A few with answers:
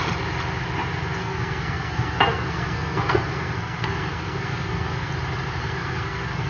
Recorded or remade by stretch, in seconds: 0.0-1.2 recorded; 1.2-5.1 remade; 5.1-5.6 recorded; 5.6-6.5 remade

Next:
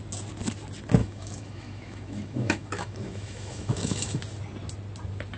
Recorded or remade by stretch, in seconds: 0.0-1.0 recorded; 1.0-4.2 remade; 4.2-5.4 recorded

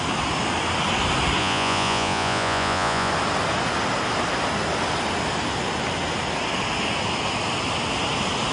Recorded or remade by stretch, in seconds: 0.0-1.4 recorded; 1.4-3.1 remade; 3.1-8.5 recorded